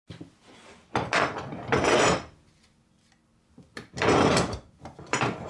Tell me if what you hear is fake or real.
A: real